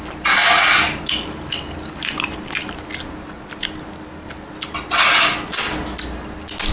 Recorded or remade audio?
recorded